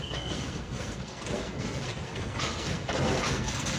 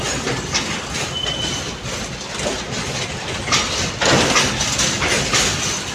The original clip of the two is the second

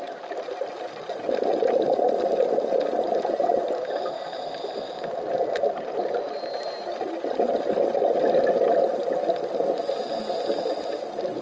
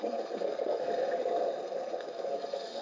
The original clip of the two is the first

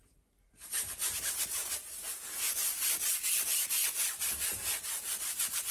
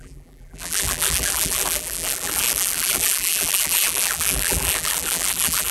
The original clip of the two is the first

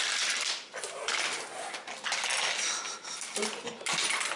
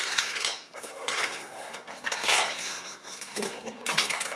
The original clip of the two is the first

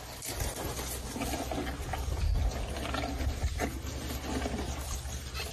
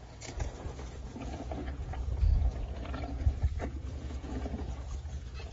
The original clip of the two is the first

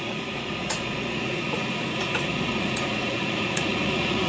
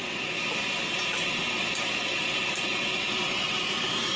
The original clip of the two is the second